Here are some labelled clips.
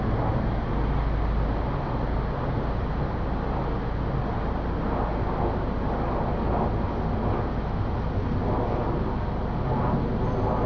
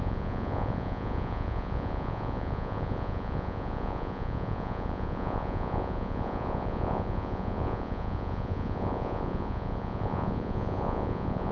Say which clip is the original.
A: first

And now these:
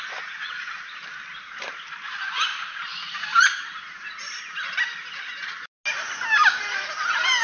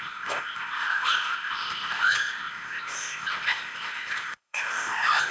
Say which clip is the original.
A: first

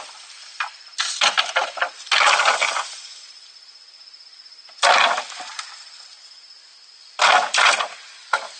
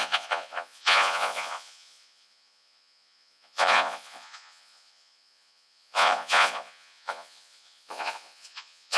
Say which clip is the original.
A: first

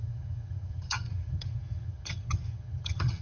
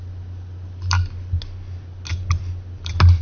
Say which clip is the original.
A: second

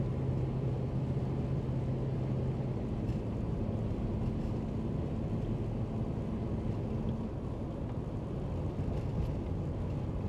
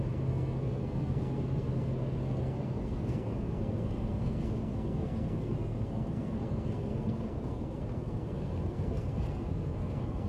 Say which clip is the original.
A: first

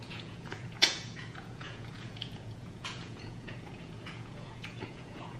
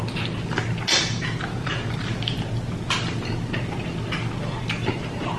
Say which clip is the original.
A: second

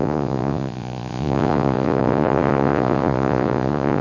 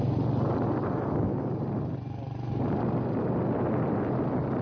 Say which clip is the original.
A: second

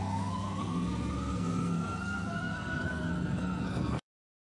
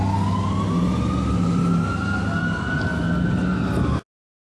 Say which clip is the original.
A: second